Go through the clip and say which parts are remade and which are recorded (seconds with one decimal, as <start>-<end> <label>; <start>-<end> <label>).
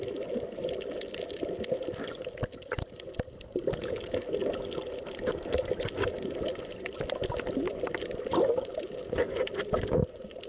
0.0-10.5 recorded